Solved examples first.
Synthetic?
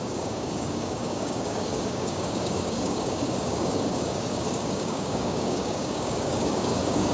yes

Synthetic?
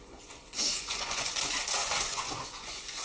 yes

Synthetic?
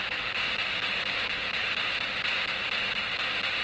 no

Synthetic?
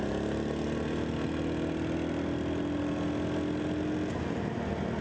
no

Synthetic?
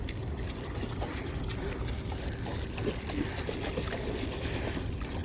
no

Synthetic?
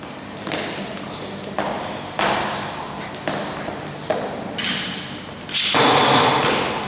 no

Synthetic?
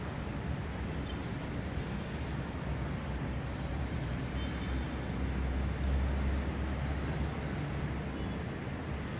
no